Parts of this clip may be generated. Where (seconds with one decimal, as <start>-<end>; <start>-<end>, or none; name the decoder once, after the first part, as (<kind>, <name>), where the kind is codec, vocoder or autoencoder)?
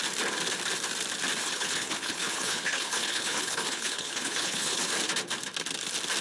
1.4-4.8 (codec, HILCodec)